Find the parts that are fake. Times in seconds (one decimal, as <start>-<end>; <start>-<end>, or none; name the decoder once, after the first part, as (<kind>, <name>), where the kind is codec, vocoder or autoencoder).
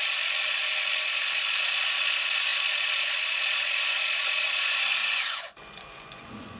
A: 5.0-6.6 (vocoder, Vocos)